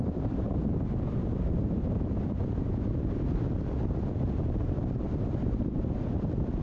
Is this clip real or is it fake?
fake